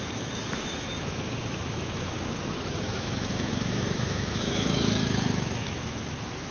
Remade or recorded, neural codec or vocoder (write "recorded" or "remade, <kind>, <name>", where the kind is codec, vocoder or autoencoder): remade, autoencoder, DAC-VAE